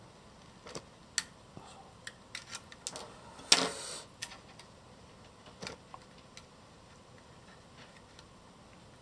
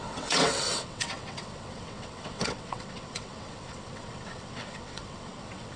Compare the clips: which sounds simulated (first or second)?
second